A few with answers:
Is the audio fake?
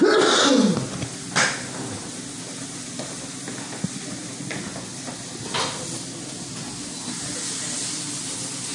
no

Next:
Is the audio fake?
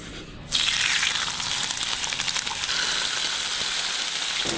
no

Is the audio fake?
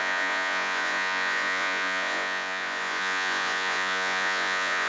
yes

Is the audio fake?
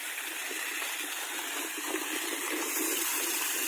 yes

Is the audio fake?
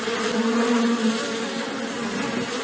no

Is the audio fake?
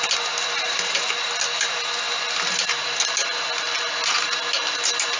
no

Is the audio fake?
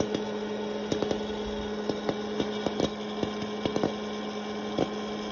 no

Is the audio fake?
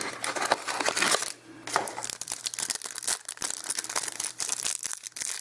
no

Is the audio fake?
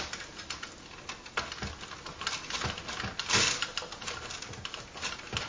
no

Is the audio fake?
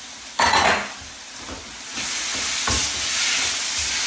no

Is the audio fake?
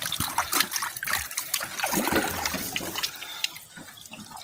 no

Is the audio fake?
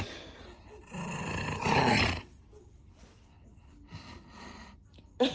no